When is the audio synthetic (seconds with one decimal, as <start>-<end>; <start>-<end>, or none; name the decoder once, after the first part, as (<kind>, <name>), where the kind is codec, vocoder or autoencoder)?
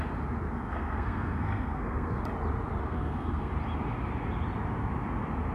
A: 0.7-2.2 (codec, SNAC); 2.8-3.5